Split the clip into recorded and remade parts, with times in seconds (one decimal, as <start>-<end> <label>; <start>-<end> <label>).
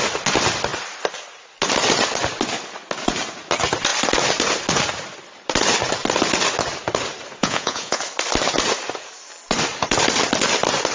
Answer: 0.0-7.4 recorded; 7.4-8.0 remade; 8.0-10.9 recorded